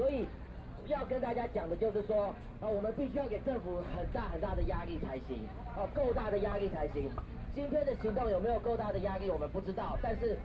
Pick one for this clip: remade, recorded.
recorded